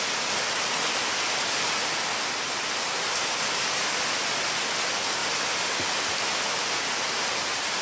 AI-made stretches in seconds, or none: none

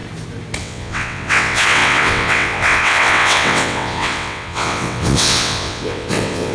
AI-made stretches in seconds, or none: 0.6-6.5 (vocoder, WaveNeXt)